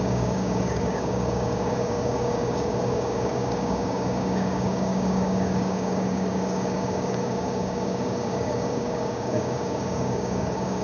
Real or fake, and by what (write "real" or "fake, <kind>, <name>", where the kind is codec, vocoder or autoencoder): fake, codec, DAC